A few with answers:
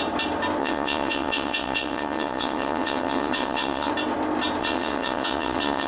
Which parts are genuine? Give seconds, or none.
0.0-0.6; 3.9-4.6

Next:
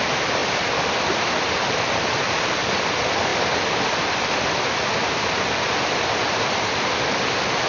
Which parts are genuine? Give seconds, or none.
0.0-7.7